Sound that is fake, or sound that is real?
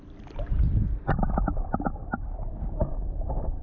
real